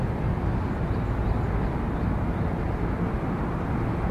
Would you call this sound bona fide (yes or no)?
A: yes